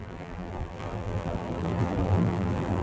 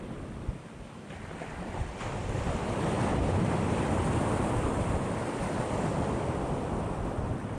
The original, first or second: second